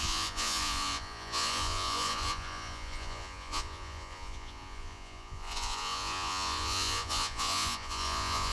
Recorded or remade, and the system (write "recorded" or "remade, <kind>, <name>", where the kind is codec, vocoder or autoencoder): remade, vocoder, Vocos